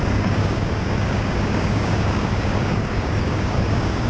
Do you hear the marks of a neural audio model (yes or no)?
yes